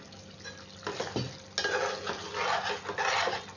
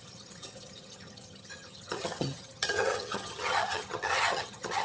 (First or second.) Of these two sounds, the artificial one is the second